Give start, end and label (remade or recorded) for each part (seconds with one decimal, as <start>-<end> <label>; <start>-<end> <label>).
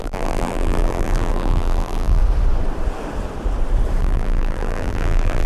0.0-2.2 remade; 2.2-4.0 recorded; 4.0-5.5 remade